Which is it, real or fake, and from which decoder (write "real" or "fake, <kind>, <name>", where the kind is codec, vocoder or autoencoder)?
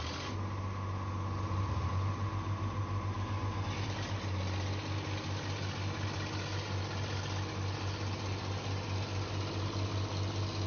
real